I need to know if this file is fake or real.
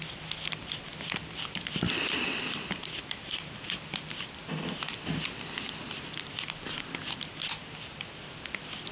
real